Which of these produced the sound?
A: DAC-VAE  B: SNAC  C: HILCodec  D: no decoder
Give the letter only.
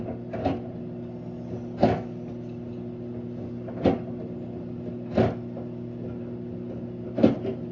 D